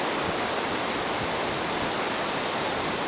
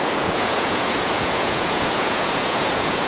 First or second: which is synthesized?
second